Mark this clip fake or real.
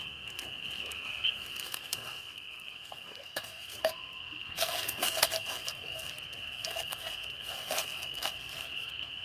fake